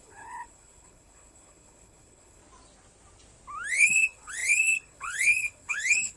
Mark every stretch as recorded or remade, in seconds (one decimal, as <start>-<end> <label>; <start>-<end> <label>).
0.0-2.4 remade; 2.4-3.7 recorded; 3.7-6.2 remade